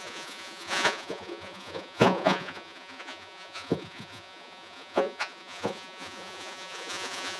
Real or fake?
fake